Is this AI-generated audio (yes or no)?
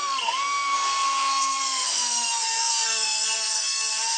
yes